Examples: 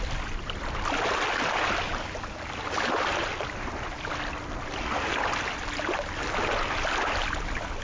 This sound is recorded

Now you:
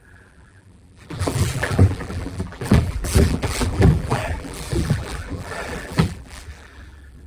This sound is remade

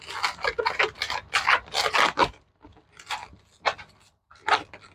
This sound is recorded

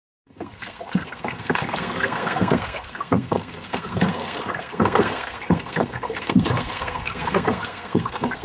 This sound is remade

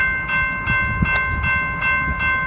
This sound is recorded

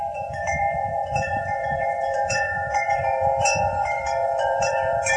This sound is remade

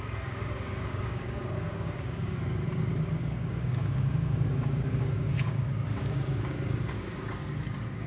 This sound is remade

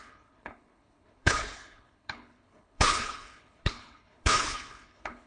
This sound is remade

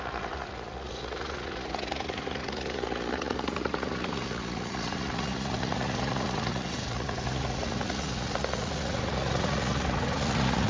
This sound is remade